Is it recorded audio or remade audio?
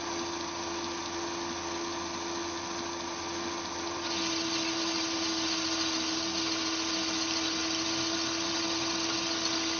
recorded